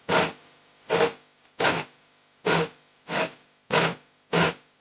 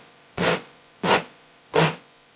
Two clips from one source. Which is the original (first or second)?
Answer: first